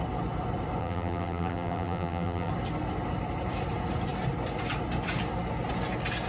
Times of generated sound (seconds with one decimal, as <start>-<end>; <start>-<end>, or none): 0.8-2.5

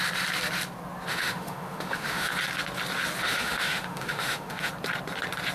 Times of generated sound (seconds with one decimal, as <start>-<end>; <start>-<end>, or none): 1.1-2.3; 3.2-4.7

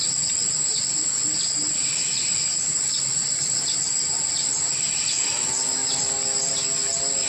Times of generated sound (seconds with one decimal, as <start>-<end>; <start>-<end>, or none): 3.1-3.8; 5.8-6.5

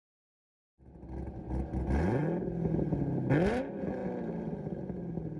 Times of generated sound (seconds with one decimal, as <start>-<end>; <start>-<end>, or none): 4.0-4.8

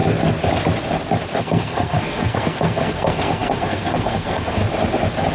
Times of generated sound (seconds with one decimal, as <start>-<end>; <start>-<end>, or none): 1.4-4.6

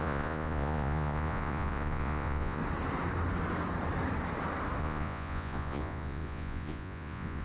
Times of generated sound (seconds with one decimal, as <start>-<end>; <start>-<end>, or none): 0.0-2.6; 4.8-7.4

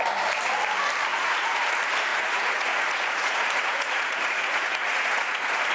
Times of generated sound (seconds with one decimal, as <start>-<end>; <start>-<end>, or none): 1.1-1.7; 2.1-5.7

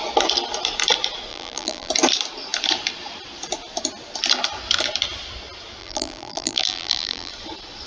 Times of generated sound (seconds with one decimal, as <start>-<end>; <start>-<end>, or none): 1.3-1.9; 5.8-7.3